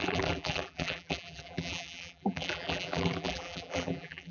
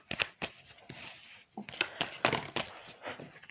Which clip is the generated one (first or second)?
first